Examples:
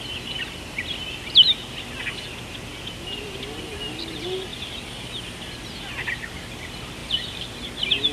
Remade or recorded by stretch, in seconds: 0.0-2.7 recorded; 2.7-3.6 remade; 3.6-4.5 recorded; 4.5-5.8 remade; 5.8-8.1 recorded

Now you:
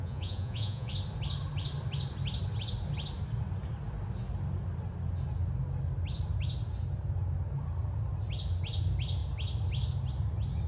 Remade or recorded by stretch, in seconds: 0.0-0.9 remade; 0.9-10.7 recorded

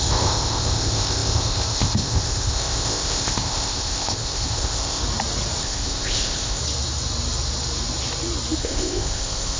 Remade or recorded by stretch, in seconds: 0.0-5.0 remade; 5.0-5.6 recorded; 5.6-6.6 remade; 6.6-8.6 recorded; 8.6-9.6 remade